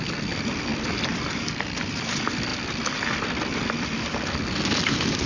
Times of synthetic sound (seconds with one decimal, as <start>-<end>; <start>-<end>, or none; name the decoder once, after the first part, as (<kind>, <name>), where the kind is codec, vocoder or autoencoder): none

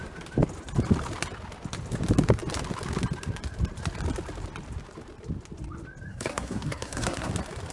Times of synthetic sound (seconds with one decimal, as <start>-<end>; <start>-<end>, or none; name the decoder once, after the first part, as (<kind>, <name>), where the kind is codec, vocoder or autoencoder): 6.1-7.3 (codec, SNAC)

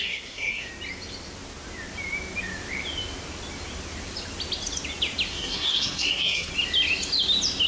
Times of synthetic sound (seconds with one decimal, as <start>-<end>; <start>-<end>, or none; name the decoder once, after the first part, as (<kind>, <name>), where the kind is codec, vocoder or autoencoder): 0.0-0.7 (codec, SNAC); 5.3-6.5